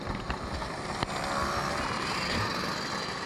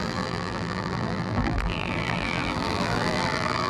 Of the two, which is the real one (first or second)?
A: first